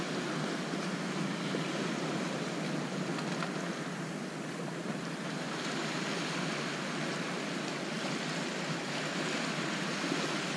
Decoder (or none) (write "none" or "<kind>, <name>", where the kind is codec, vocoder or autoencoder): none